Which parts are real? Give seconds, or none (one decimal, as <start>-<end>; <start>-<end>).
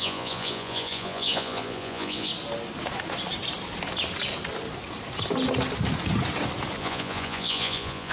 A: 2.3-6.8